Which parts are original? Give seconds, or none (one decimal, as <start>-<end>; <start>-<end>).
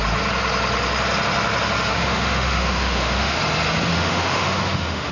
0.0-1.9; 3.4-3.9